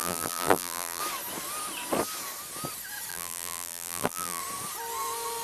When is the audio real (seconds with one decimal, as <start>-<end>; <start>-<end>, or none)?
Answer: 1.0-3.1; 4.4-5.4